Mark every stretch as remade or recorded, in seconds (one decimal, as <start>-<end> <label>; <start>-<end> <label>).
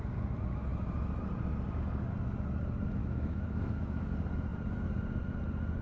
0.0-3.0 recorded; 3.0-4.1 remade; 4.1-5.8 recorded